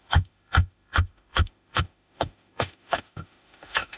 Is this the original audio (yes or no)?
no